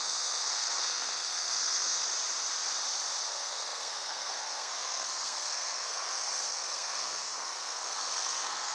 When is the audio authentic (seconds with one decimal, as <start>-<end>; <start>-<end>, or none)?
2.0-3.2